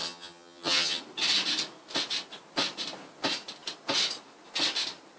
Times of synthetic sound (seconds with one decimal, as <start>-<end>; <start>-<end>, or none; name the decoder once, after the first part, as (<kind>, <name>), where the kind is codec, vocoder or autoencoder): 0.0-1.0 (vocoder, HiFi-GAN)